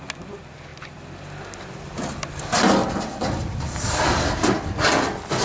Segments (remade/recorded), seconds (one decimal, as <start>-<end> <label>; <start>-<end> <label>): 0.0-2.8 recorded; 2.8-3.9 remade; 3.9-5.4 recorded